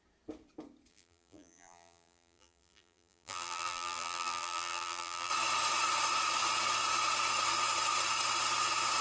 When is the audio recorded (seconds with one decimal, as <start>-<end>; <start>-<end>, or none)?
0.0-0.9; 5.3-9.0